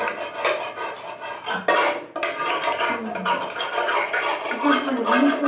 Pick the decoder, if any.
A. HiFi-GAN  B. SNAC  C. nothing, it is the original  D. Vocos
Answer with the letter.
C